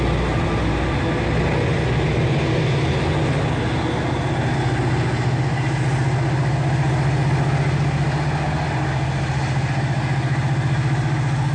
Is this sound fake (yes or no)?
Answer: no